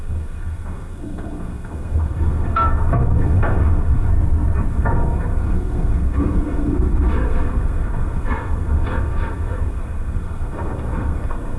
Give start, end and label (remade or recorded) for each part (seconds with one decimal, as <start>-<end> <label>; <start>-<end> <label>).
0.0-4.1 remade; 4.1-4.7 recorded; 4.7-11.6 remade